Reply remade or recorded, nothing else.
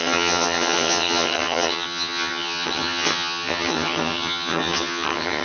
remade